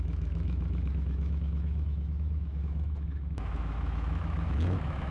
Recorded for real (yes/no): no